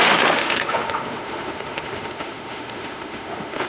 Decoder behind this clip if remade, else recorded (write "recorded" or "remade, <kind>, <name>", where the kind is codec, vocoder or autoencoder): remade, autoencoder, DAC-VAE